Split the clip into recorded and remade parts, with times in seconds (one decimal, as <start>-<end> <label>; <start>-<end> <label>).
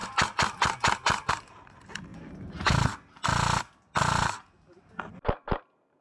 0.0-6.0 recorded